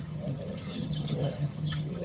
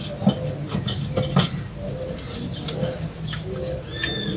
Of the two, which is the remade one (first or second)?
first